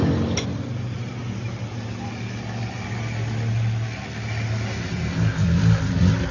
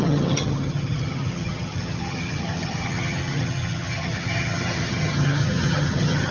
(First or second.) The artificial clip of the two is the second